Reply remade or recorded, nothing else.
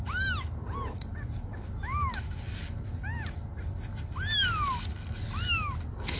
recorded